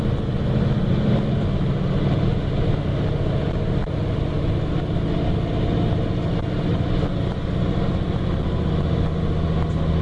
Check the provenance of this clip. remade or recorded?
recorded